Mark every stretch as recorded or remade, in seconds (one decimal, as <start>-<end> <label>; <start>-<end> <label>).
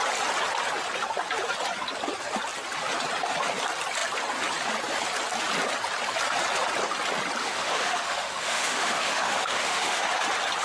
0.0-7.4 recorded; 7.4-10.0 remade; 10.0-10.6 recorded